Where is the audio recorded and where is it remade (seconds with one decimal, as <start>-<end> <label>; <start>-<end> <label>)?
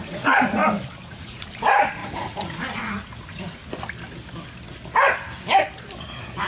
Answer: 0.0-0.6 remade; 0.6-1.1 recorded; 1.1-3.6 remade; 3.6-6.5 recorded